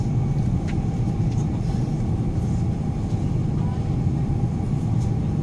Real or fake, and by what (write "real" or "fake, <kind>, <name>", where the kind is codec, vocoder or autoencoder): real